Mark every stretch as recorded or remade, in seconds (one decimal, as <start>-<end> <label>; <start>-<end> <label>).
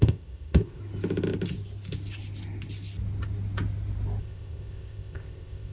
0.0-0.8 remade; 0.8-4.2 recorded; 4.2-5.7 remade